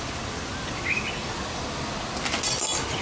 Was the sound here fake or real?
real